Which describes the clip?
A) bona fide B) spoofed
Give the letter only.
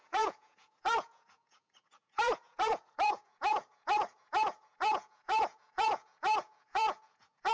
B